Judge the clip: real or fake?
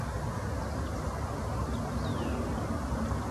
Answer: real